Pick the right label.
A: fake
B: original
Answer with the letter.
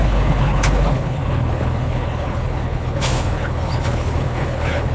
A